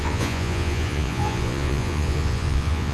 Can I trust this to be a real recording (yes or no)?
no